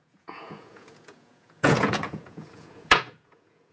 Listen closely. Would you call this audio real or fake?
fake